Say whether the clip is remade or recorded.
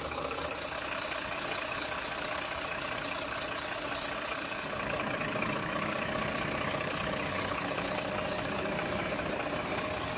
remade